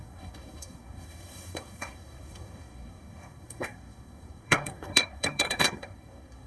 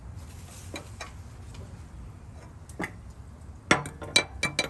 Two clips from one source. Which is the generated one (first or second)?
first